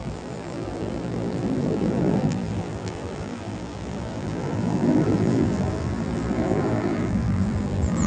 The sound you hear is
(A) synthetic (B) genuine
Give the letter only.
A